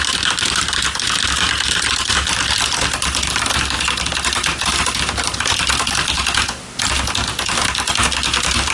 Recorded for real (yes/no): yes